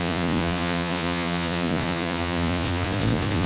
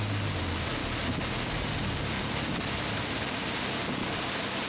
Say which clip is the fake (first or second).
first